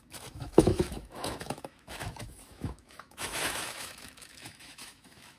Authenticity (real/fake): fake